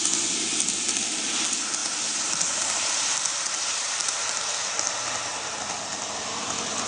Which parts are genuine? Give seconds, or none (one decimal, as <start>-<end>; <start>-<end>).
0.0-1.8; 4.4-6.9